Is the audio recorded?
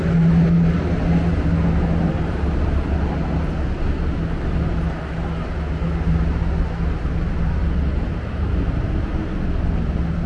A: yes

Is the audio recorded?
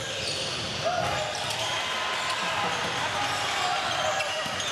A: yes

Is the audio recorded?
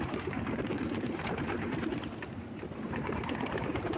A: no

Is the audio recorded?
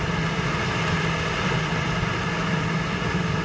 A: no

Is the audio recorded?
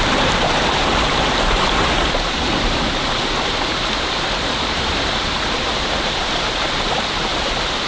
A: no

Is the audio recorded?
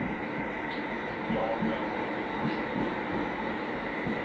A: yes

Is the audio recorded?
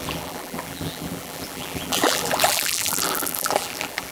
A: no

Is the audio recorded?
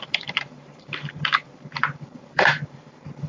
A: no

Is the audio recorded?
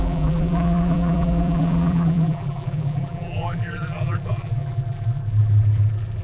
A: no